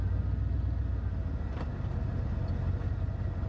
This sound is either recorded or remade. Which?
recorded